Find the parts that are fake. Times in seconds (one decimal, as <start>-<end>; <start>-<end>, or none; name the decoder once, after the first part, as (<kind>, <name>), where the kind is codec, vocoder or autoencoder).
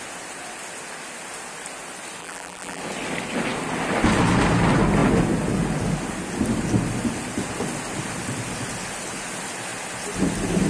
2.2-2.8 (vocoder, BigVGAN v2)